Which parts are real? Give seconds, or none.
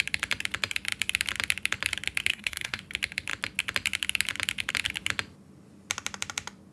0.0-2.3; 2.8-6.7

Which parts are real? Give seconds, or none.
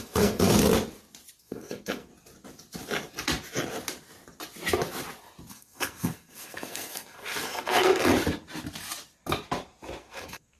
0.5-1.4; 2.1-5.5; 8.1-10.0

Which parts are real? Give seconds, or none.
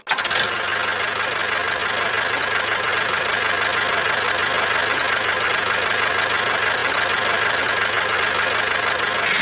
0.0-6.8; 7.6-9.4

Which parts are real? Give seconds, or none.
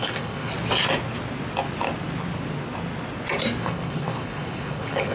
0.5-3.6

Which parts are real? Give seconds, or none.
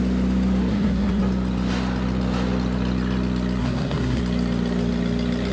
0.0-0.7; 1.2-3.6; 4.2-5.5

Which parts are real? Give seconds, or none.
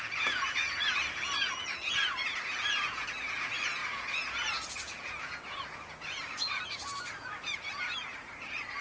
8.1-8.8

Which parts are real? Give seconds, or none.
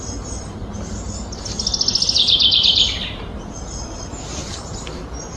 0.0-5.4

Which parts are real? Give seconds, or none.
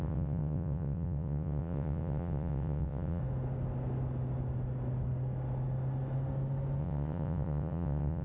3.2-6.8